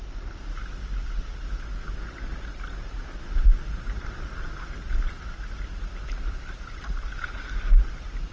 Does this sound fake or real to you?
real